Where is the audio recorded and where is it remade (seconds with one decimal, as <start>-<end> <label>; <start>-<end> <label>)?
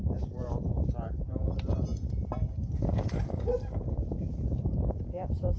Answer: 0.0-5.6 remade